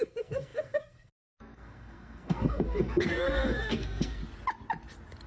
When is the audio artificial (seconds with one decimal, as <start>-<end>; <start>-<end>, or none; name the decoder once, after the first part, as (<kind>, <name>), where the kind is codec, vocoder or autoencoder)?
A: 0.0-4.2 (codec, SNAC)